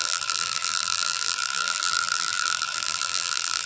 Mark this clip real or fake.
fake